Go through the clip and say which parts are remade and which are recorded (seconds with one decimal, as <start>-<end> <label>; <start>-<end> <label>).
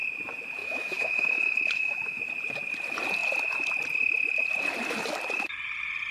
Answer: 0.0-0.6 recorded; 0.6-2.2 remade; 2.2-6.1 recorded